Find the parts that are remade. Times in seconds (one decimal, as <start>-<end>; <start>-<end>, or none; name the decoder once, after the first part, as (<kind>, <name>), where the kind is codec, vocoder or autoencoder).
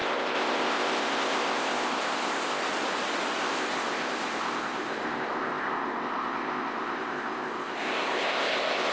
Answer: 0.0-2.6 (codec, ZipCodec); 3.4-8.9